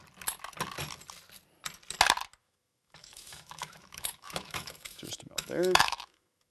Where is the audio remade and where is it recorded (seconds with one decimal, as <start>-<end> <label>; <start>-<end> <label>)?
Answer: 0.0-2.4 recorded; 2.4-6.5 remade